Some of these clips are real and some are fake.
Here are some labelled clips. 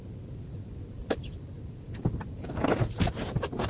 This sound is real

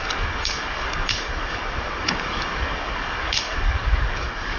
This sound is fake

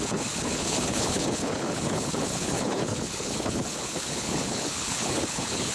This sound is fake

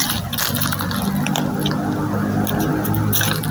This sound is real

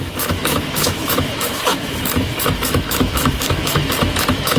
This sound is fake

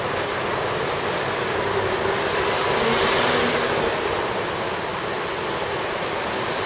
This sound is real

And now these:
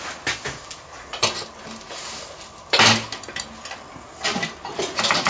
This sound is real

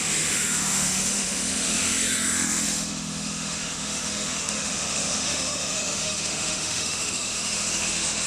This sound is fake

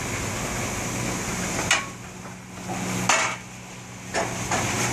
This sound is real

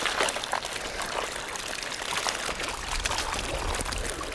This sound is real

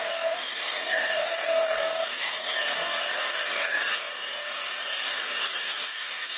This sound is fake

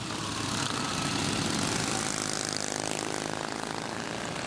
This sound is real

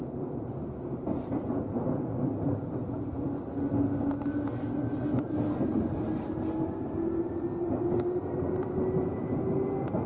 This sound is real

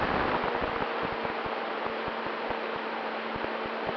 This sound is real